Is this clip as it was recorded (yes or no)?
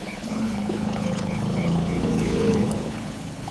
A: no